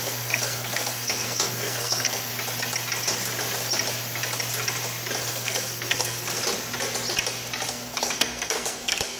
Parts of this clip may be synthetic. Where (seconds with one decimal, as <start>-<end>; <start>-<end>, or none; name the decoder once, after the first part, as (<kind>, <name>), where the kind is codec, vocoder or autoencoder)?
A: 0.0-2.3 (codec, SNAC); 5.2-6.4; 7.7-9.2